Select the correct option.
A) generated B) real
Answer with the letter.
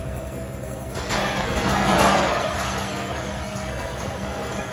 A